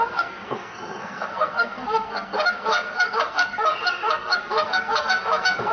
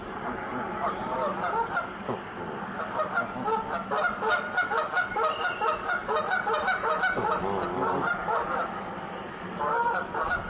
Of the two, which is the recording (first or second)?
second